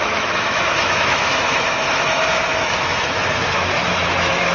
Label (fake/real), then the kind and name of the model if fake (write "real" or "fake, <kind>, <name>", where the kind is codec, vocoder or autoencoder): fake, autoencoder, DAC-VAE